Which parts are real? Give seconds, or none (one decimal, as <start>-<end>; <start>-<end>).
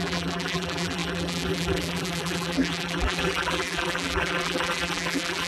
none